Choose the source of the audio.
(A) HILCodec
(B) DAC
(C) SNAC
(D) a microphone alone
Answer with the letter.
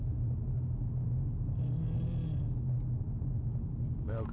D